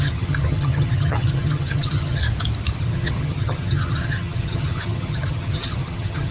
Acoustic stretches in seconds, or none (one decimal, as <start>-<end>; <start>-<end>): 2.2-2.8